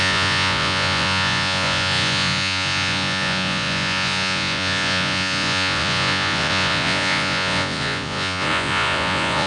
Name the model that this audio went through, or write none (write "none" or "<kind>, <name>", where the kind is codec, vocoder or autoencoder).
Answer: vocoder, Vocos